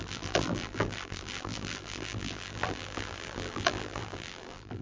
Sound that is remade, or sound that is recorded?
remade